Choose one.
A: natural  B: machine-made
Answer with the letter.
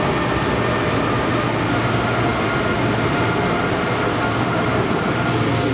A